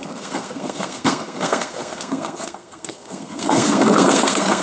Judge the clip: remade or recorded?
remade